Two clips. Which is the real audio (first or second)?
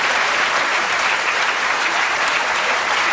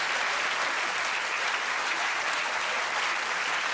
second